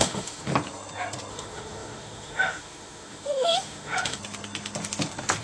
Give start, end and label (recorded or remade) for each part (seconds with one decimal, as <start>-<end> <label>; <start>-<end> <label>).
0.0-0.5 remade; 0.5-1.3 recorded; 1.3-4.2 remade; 4.2-5.4 recorded